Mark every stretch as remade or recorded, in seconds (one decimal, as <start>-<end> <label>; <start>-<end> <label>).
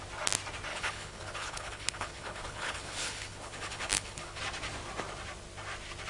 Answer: 0.0-0.7 recorded; 0.7-4.4 remade; 4.4-6.1 recorded